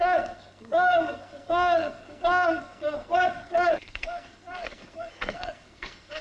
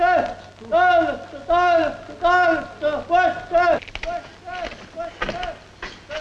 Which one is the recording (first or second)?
second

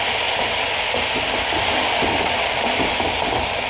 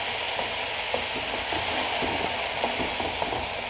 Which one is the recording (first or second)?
second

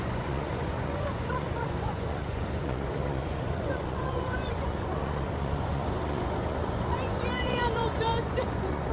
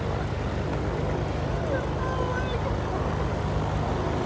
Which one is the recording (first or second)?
second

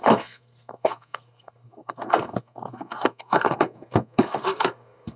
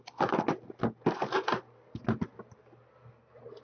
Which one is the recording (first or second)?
second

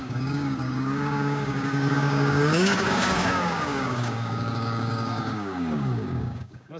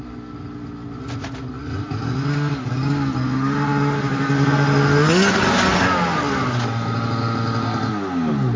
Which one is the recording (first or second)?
second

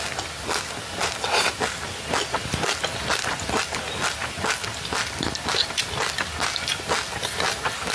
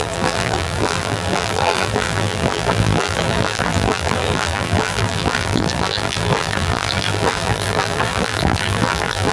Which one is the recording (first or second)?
first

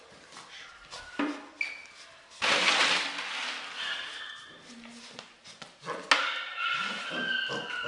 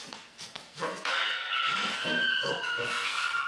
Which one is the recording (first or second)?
first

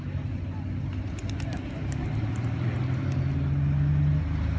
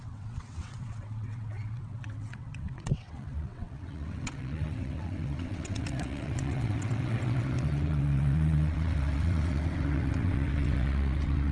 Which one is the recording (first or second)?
first